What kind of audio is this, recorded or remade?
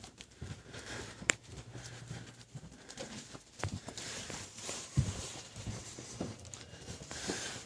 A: remade